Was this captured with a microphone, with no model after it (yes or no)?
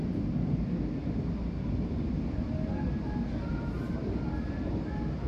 yes